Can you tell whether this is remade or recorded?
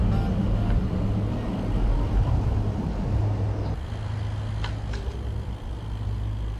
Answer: recorded